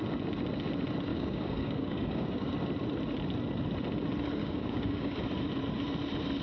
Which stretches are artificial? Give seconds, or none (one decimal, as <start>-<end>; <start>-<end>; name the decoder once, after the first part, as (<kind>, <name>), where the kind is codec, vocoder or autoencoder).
1.1-2.5 (codec, DAC); 4.4-5.2